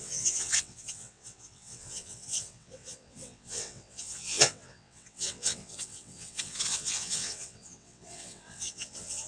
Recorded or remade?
remade